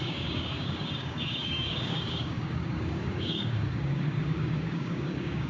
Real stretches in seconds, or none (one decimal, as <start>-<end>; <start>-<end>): none